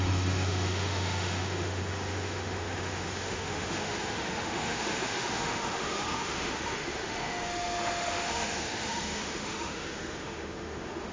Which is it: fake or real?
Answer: fake